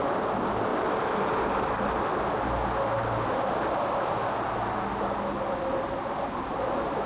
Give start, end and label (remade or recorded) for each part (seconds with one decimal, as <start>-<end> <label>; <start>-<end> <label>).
0.0-7.1 recorded